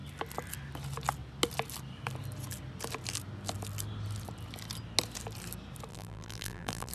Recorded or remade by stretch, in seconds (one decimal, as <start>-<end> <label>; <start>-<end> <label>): 0.0-5.9 recorded; 5.9-6.9 remade